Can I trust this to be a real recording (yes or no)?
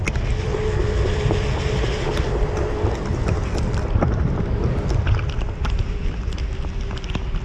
yes